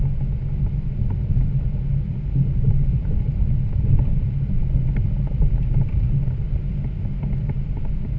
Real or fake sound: real